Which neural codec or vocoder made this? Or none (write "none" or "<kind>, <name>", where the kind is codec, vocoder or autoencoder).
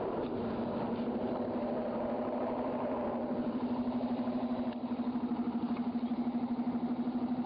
vocoder, BigVGAN v2